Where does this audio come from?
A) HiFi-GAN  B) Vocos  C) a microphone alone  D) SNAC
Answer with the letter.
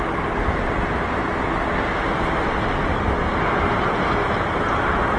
C